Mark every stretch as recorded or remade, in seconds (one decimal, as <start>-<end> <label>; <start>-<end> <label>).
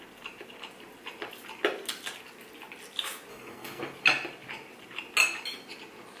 0.0-3.3 recorded; 3.3-3.8 remade; 3.8-6.2 recorded